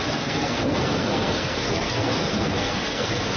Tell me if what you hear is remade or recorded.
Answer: remade